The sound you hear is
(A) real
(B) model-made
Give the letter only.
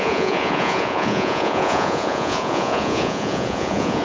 B